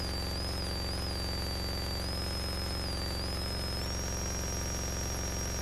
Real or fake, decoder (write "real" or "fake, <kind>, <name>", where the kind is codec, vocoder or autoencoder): real